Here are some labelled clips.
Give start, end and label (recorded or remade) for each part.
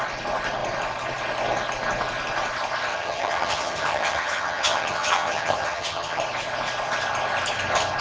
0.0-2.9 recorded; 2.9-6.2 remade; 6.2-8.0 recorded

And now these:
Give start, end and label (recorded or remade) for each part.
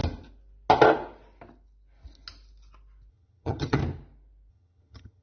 0.0-3.1 recorded; 3.1-3.8 remade; 3.8-4.5 recorded; 4.5-5.2 remade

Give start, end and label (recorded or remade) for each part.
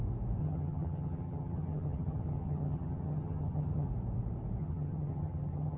0.0-0.4 recorded; 0.4-3.9 remade; 3.9-4.6 recorded; 4.6-5.8 remade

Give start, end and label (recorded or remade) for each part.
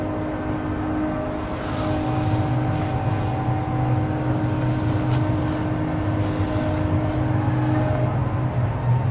0.0-9.1 recorded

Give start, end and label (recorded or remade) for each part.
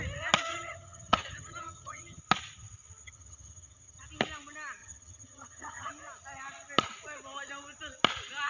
0.0-0.5 recorded; 0.5-2.2 remade; 2.2-3.0 recorded; 3.0-4.1 remade; 4.1-4.8 recorded; 4.8-5.9 remade; 5.9-8.5 recorded